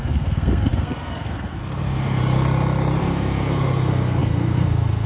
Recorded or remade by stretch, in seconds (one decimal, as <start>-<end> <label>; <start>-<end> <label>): 0.0-2.2 remade; 2.2-3.0 recorded; 3.0-5.1 remade